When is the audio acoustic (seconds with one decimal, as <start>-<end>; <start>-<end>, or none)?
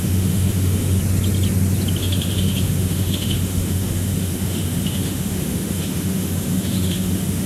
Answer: 1.0-2.0